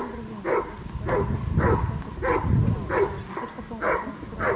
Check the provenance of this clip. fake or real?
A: real